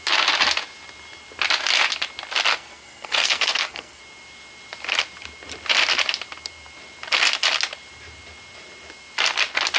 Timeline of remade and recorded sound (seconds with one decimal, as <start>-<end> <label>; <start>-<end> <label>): 0.0-2.5 recorded; 2.5-4.0 remade; 4.0-9.8 recorded